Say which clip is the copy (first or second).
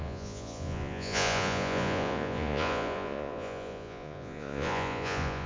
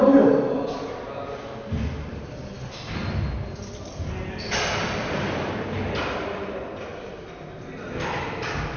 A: first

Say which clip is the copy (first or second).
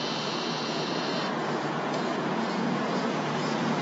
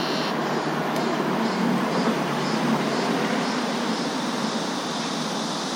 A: first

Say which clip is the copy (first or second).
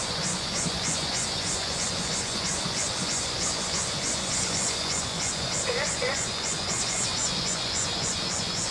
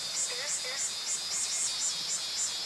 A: first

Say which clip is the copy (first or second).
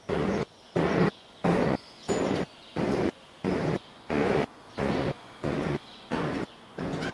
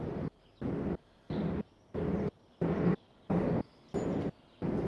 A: first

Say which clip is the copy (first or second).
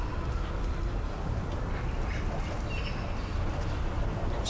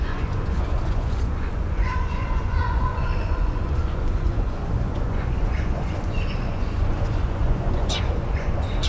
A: second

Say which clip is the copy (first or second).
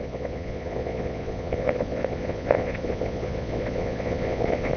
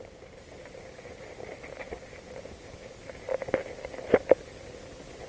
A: first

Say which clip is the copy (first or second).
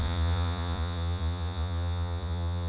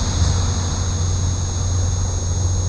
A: first